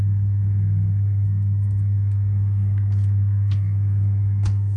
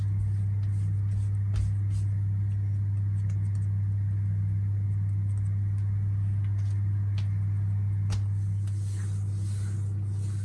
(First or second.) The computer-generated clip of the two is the first